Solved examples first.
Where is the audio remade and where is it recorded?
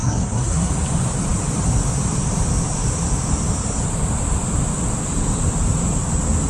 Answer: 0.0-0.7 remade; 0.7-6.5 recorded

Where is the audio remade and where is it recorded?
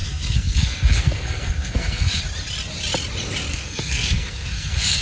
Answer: 0.0-2.2 remade; 2.2-3.5 recorded; 3.5-5.0 remade